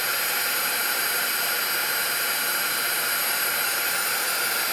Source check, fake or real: fake